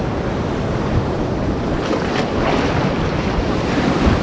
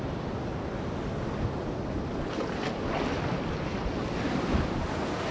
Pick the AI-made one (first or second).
first